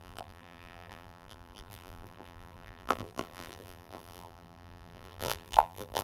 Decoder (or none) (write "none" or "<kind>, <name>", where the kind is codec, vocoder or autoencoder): vocoder, BigVGAN v2